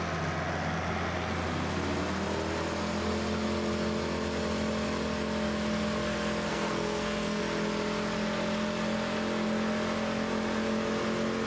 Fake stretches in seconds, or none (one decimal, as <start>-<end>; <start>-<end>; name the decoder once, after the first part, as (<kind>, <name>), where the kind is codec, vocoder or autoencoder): 6.5-7.4 (codec, SNAC)